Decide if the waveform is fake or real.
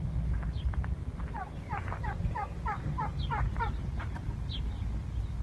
real